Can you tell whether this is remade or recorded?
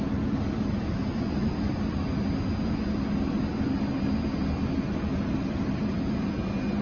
recorded